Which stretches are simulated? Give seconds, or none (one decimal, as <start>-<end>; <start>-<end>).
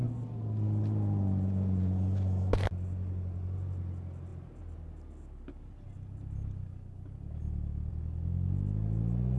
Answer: none